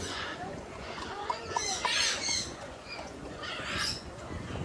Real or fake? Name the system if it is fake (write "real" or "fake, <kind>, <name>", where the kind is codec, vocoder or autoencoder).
fake, vocoder, Vocos